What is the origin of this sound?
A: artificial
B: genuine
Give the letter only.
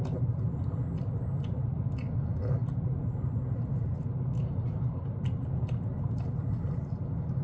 B